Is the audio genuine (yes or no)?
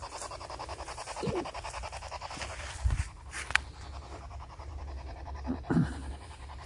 no